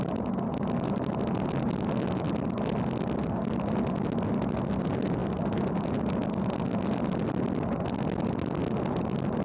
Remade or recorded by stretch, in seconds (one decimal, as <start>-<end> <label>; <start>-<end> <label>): 0.0-9.4 recorded